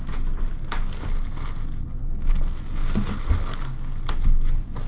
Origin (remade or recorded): recorded